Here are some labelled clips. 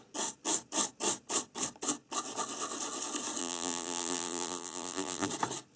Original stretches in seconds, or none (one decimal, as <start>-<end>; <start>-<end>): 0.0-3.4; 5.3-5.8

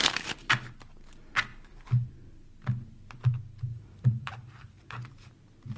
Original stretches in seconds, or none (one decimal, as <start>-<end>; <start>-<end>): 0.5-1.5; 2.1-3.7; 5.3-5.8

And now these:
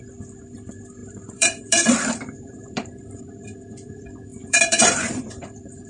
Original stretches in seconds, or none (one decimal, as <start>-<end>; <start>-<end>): 0.0-1.0; 3.2-4.3

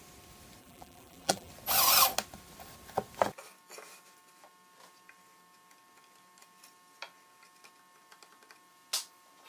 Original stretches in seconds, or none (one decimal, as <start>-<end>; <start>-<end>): 0.0-0.6; 1.5-9.5

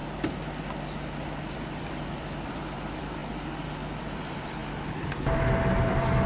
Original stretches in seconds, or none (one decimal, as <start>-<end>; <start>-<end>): 0.0-1.8; 3.2-4.0; 4.6-5.8

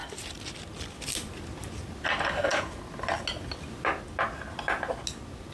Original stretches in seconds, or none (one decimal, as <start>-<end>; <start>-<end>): 0.6-5.5